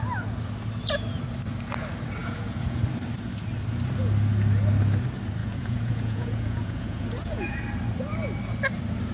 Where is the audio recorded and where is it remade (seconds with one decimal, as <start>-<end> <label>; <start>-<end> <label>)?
0.0-2.2 recorded; 2.2-2.8 remade; 2.8-5.4 recorded; 5.4-7.6 remade; 7.6-9.1 recorded